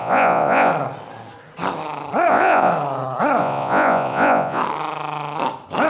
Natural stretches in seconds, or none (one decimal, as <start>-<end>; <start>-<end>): 0.7-2.3; 2.7-3.4; 4.6-5.9